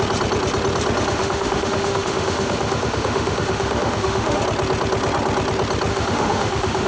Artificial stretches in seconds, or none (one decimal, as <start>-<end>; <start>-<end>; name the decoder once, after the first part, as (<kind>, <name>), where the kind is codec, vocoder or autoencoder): 1.1-4.4 (autoencoder, DAC-VAE); 5.9-6.9